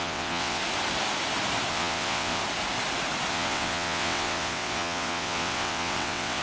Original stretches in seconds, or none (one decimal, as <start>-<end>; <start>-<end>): 0.6-1.7; 2.4-3.3